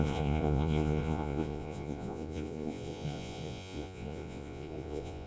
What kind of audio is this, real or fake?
fake